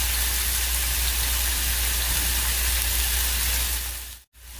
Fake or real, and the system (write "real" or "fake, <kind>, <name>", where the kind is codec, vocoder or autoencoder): real